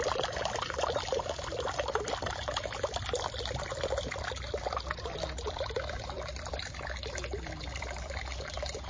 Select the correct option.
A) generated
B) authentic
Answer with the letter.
A